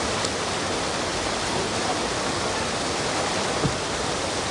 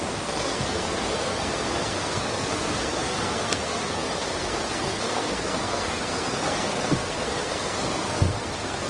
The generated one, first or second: second